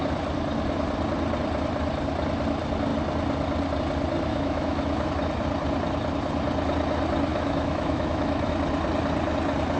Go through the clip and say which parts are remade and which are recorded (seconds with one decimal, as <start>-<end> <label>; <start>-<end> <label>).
0.0-4.3 recorded; 4.3-5.1 remade; 5.1-7.3 recorded; 7.3-8.5 remade; 8.5-9.8 recorded